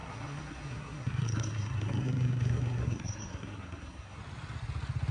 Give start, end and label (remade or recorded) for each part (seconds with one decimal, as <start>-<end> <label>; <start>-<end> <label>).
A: 0.0-4.2 remade; 4.2-5.1 recorded